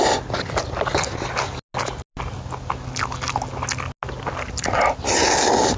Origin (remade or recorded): recorded